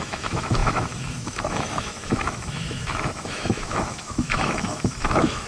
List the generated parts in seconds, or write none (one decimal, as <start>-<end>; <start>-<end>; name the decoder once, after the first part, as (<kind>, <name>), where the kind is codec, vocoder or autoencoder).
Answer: 0.0-5.5 (autoencoder, DAC-VAE)